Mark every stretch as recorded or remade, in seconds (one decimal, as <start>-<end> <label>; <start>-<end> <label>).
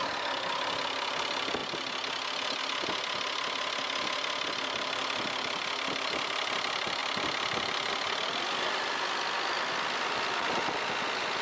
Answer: 0.0-11.4 recorded